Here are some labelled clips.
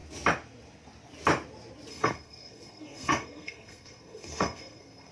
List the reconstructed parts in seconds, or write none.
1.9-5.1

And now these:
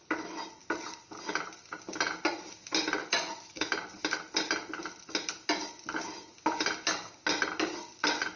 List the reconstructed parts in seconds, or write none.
3.0-3.7

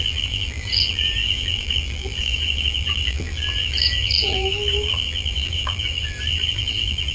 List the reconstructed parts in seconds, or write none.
0.0-7.1

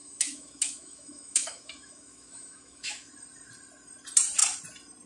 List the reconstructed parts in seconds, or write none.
0.0-3.1

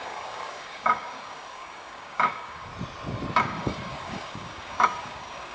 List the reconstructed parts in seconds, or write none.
0.0-2.7; 3.4-5.5

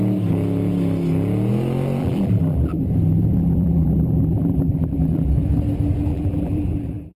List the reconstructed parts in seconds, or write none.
2.0-2.8; 3.4-5.3; 6.1-7.2